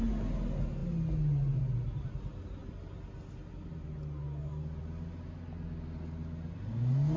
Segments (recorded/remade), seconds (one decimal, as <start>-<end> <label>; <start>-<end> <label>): 0.0-7.2 recorded